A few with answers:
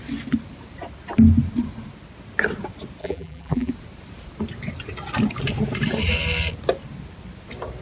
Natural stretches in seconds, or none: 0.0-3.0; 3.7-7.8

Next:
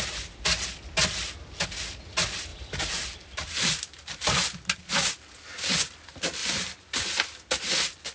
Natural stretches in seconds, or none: 0.0-2.5; 4.9-6.4; 7.0-8.1

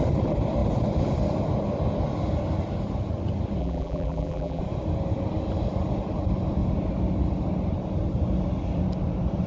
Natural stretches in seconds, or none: 0.0-3.6; 4.6-9.5

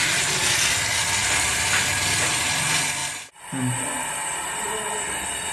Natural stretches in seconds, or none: 0.0-5.5

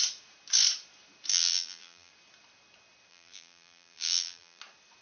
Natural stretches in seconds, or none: 0.0-1.3; 2.1-3.1; 4.6-5.0

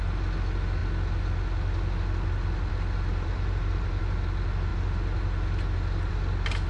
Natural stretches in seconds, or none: 0.0-3.1; 4.0-6.7

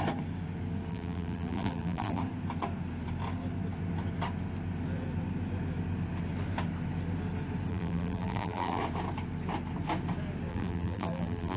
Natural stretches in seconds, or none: 0.0-0.9; 2.2-7.7; 8.8-10.5